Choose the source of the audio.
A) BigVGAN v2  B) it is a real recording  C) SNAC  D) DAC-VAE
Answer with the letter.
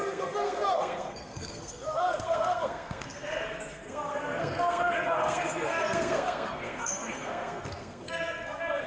C